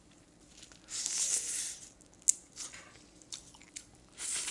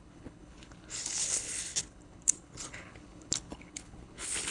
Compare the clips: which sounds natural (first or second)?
first